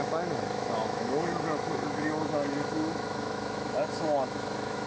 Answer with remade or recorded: remade